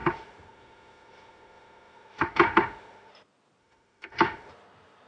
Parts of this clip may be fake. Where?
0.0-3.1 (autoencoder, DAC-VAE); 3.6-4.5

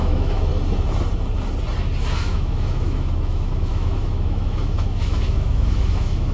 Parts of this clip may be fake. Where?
0.0-0.5 (autoencoder, DAC-VAE); 2.2-6.3

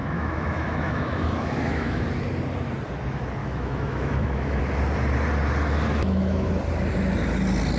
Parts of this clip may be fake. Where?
0.0-2.0 (autoencoder, DAC-VAE); 3.4-4.6; 5.9-6.5

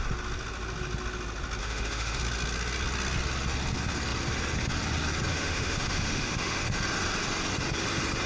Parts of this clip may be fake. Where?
1.6-2.2 (autoencoder, DAC-VAE); 5.3-6.6